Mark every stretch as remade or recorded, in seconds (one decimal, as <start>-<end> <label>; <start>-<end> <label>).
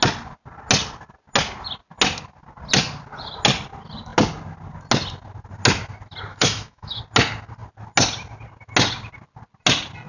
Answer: 0.0-6.3 recorded; 6.3-7.0 remade; 7.0-10.1 recorded